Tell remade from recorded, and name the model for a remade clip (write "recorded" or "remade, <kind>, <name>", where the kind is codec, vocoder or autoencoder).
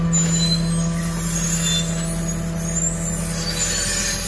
recorded